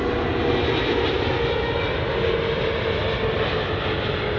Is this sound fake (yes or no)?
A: no